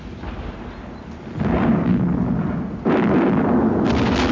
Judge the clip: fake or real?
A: real